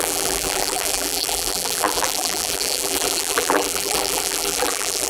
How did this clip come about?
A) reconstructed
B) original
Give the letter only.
A